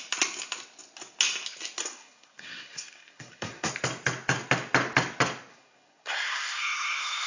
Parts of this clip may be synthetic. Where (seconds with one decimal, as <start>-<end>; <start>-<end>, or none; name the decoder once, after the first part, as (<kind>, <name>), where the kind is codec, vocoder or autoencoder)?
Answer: 1.8-3.7 (codec, SNAC); 5.5-7.3